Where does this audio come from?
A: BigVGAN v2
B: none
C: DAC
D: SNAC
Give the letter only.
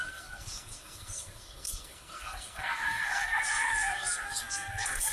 D